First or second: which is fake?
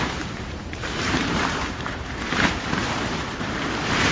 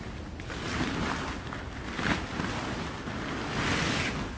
first